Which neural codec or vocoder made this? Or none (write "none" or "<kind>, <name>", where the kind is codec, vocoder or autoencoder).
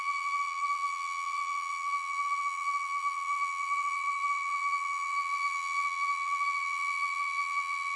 vocoder, BigVGAN v2